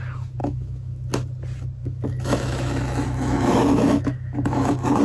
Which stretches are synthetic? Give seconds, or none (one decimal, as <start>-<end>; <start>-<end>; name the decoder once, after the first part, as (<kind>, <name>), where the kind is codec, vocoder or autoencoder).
0.4-1.1 (autoencoder, DAC-VAE); 1.8-5.0

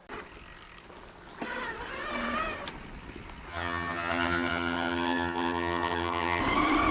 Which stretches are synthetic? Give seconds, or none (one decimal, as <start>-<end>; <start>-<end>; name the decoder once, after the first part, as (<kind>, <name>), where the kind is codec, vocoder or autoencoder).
3.5-6.4 (vocoder, HiFi-GAN)

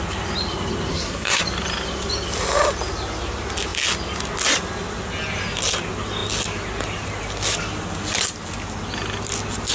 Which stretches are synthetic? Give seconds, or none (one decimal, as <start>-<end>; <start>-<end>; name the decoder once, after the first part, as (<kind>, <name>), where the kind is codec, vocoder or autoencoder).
0.9-1.4 (codec, SNAC)

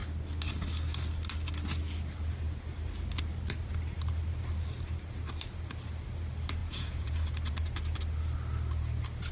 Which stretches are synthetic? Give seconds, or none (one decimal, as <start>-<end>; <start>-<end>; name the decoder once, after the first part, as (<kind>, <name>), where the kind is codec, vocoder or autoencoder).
6.6-7.1 (vocoder, Vocos)

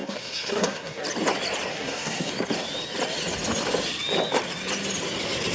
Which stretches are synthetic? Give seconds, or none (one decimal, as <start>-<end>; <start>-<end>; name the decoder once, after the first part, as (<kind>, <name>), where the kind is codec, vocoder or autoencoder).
0.0-1.0 (codec, SNAC); 1.7-2.3

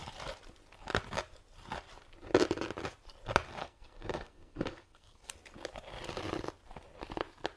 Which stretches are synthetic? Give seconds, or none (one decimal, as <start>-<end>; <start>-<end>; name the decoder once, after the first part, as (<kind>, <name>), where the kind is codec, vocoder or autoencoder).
3.6-5.3 (codec, SNAC)

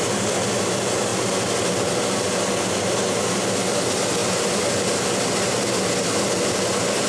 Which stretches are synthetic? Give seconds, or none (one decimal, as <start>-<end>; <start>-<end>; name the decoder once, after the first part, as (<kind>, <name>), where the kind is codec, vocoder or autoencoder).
none